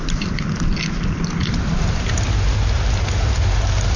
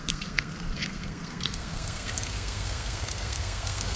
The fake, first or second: second